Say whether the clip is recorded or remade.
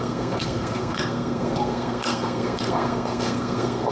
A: remade